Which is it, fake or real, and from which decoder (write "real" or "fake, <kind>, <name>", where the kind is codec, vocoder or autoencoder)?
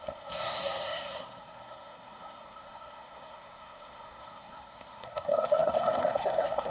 fake, codec, SNAC